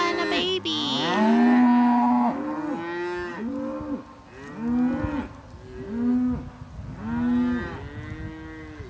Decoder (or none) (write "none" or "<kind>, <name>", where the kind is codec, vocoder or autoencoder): none